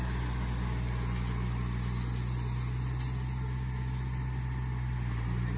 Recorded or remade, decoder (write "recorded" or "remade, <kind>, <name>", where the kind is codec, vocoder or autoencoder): recorded